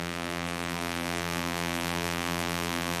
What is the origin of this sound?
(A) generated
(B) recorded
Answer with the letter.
A